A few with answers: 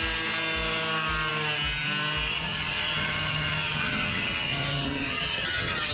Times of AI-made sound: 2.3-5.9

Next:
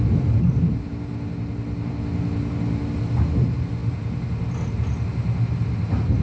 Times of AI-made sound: none

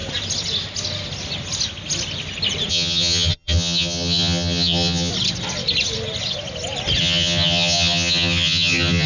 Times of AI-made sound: 2.7-5.1; 7.0-9.1

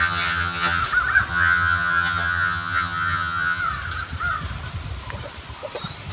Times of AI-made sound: 0.0-0.8; 1.3-3.6

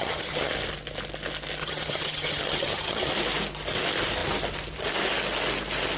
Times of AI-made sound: 0.0-0.5; 1.6-3.1

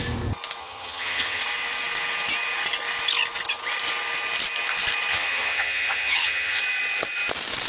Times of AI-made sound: 0.6-1.4; 5.1-6.6